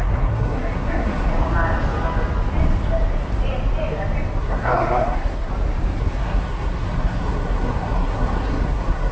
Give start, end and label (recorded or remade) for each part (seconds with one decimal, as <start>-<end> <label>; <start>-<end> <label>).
0.0-1.3 remade; 1.3-4.4 recorded; 4.4-5.5 remade; 5.5-6.0 recorded; 6.0-9.1 remade